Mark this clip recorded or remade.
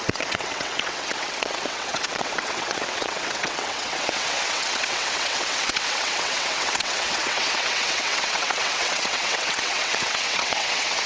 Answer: remade